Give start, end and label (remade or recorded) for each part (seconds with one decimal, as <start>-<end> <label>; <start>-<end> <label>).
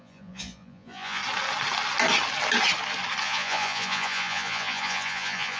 0.0-1.2 remade; 1.2-3.2 recorded; 3.2-5.6 remade